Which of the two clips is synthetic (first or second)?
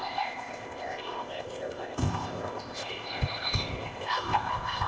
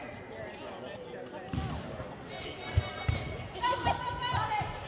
first